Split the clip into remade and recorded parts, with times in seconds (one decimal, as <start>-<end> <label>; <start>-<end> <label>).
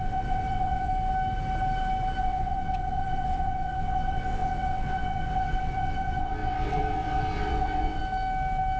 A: 0.0-0.9 remade; 0.9-2.2 recorded; 2.2-8.0 remade; 8.0-8.8 recorded